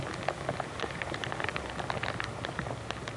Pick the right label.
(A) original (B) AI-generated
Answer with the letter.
A